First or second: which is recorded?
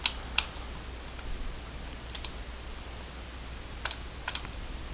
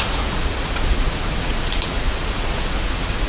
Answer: first